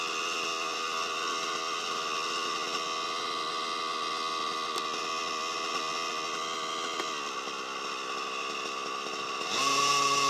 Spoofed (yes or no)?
no